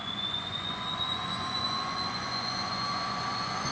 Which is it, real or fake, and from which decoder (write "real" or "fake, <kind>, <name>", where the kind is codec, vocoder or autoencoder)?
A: fake, vocoder, Vocos